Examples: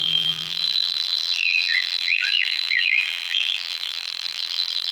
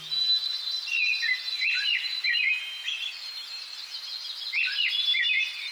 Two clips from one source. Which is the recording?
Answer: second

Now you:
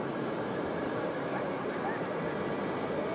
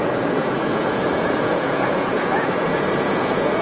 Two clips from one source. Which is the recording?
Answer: first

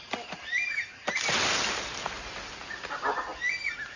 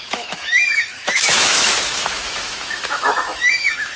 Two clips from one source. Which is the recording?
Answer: first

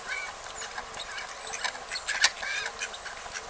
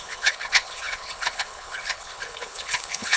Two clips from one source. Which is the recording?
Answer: first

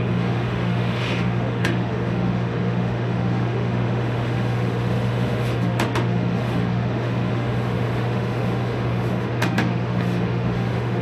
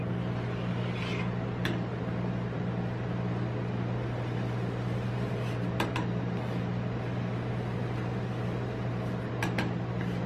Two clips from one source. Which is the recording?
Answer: second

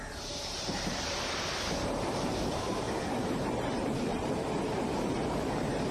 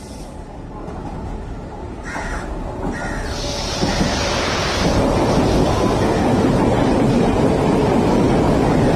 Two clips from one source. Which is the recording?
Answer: second